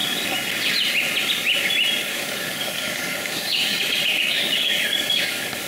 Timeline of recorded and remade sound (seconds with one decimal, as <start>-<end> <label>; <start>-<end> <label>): 0.0-2.0 recorded; 2.0-5.7 remade

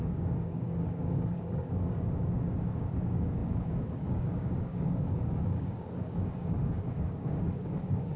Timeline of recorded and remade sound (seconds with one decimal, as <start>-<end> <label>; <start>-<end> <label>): 0.0-8.2 remade

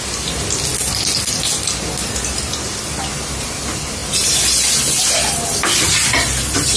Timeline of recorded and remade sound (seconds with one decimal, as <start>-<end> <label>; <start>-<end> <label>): 0.0-6.8 recorded

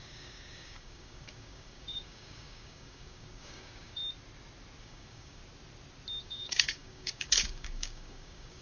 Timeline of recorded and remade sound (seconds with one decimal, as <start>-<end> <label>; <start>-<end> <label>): 0.0-4.0 remade; 4.0-4.8 recorded; 4.8-5.4 remade; 5.4-6.2 recorded; 6.2-8.6 remade

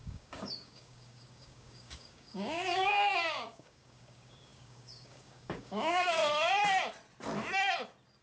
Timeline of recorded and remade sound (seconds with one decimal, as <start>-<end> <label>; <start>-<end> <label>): 0.0-6.2 remade; 6.2-8.2 recorded

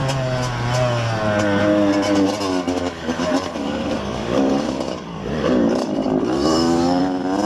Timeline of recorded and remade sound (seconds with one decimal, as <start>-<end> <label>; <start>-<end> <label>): 0.0-2.5 recorded; 2.5-7.0 remade; 7.0-7.5 recorded

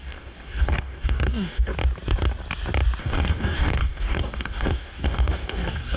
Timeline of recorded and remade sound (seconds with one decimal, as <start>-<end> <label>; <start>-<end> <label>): 0.0-1.7 remade; 1.7-3.0 recorded; 3.0-6.0 remade